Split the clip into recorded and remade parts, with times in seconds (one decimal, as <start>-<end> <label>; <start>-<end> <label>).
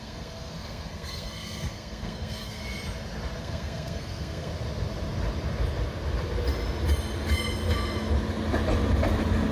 0.0-2.6 remade; 2.6-3.4 recorded; 3.4-4.5 remade; 4.5-9.5 recorded